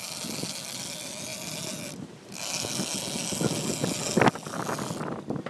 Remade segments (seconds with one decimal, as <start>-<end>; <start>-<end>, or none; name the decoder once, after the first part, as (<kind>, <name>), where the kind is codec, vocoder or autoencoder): none